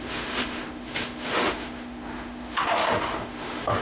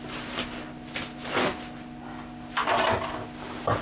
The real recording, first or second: second